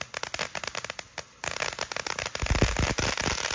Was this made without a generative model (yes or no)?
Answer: yes